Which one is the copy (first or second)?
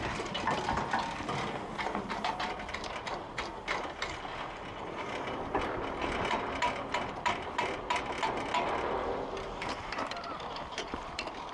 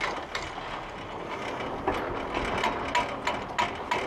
first